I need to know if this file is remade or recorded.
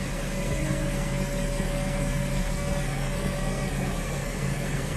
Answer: remade